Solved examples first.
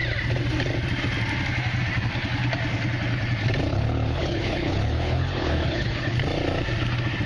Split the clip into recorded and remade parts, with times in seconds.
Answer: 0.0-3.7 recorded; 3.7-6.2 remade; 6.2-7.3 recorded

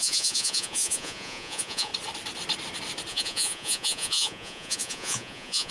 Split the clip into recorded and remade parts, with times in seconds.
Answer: 0.0-1.9 remade; 1.9-3.1 recorded; 3.1-5.7 remade

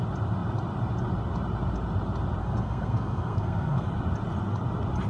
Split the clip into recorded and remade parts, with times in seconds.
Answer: 0.0-2.4 recorded; 2.4-3.9 remade; 3.9-5.1 recorded

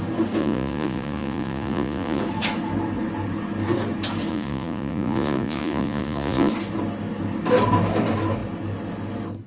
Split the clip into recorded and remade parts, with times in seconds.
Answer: 0.0-0.4 recorded; 0.4-2.2 remade; 2.2-4.3 recorded; 4.3-6.5 remade; 6.5-9.5 recorded

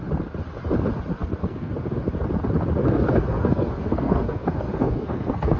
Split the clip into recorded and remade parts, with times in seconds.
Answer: 0.0-1.1 recorded; 1.1-1.7 remade; 1.7-2.8 recorded; 2.8-5.6 remade

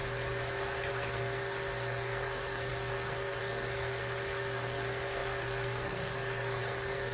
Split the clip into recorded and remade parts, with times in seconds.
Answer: 0.0-0.9 recorded; 0.9-7.1 remade

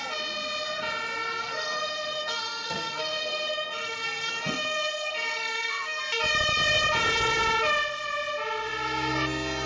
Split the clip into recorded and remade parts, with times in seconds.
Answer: 0.0-1.4 recorded; 1.4-6.0 remade; 6.0-9.7 recorded